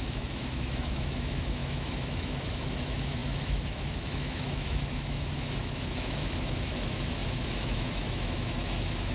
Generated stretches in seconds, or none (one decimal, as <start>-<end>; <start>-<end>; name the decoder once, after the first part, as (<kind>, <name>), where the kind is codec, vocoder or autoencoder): 0.0-9.1 (autoencoder, DAC-VAE)